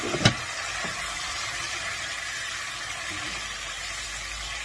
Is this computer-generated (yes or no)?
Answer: no